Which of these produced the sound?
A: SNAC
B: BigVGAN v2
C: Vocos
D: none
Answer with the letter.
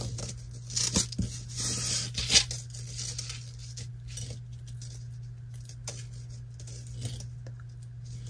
D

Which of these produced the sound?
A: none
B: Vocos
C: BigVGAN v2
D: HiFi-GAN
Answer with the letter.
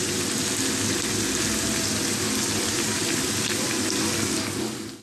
A